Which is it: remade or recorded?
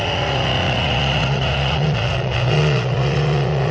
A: remade